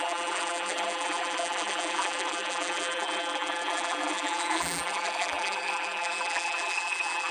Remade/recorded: remade